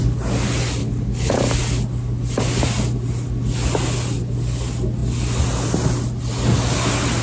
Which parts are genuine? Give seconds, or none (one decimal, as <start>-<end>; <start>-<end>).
0.0-0.8; 1.4-7.2